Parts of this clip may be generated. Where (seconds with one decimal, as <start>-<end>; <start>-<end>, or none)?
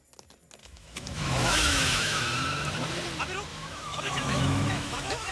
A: 0.6-2.2; 3.5-5.3